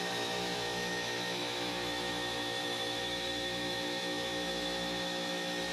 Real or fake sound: fake